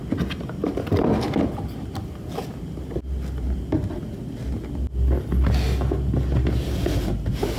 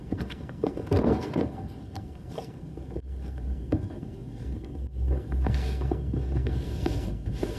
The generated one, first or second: second